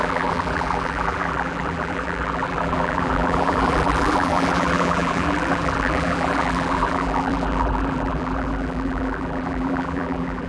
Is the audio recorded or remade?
remade